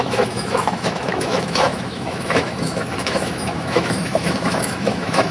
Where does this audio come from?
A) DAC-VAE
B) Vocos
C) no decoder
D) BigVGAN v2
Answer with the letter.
A